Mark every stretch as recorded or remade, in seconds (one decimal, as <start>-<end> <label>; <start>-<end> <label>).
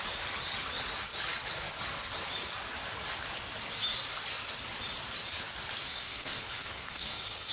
0.0-5.9 recorded; 5.9-7.5 remade